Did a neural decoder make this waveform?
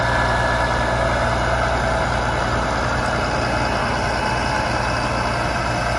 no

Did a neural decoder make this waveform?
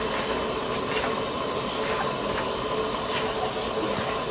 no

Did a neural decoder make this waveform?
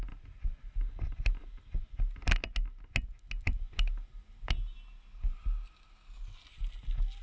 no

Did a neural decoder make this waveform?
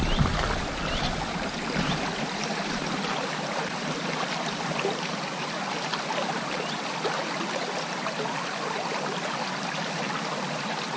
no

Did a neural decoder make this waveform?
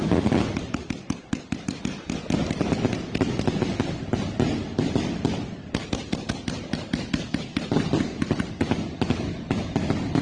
no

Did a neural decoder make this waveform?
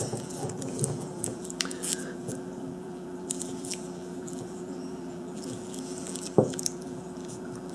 yes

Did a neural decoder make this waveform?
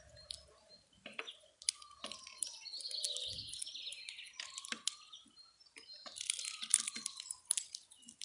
no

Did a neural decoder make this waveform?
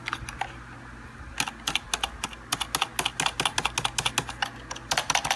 no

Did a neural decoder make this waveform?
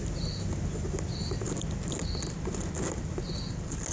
no